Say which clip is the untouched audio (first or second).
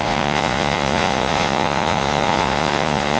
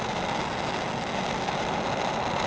second